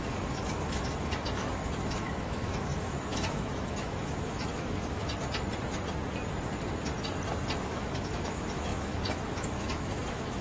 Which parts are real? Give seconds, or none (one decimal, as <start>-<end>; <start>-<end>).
5.0-7.7